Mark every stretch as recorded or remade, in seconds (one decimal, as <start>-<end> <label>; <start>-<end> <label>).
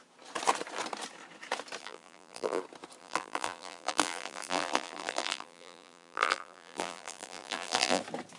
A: 0.0-1.8 recorded; 1.8-2.6 remade; 2.6-3.0 recorded; 3.0-8.0 remade; 8.0-8.4 recorded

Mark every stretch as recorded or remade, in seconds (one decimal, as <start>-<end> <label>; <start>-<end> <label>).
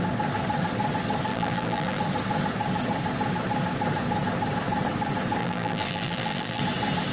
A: 0.0-1.3 recorded; 1.3-2.0 remade; 2.0-5.4 recorded; 5.4-6.6 remade; 6.6-7.1 recorded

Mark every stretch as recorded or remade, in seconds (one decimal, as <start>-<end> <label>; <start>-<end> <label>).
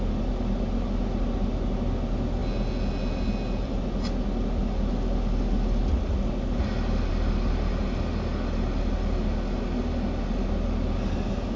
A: 0.0-11.6 recorded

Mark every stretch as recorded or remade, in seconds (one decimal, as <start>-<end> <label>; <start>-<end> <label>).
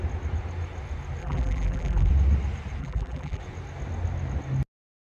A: 0.0-1.2 recorded; 1.2-2.1 remade; 2.1-2.8 recorded; 2.8-3.4 remade; 3.4-5.1 recorded